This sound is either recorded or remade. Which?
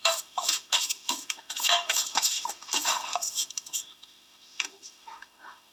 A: remade